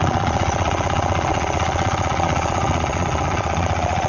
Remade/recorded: remade